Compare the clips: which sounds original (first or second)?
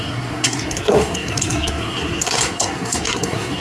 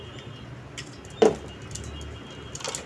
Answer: second